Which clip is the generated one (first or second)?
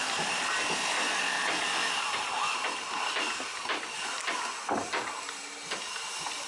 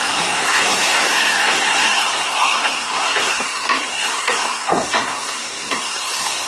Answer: second